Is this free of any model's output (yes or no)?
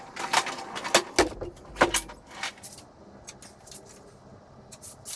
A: yes